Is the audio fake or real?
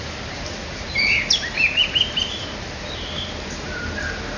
real